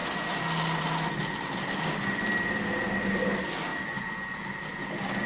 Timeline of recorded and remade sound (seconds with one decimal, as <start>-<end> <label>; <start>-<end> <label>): 0.0-5.3 recorded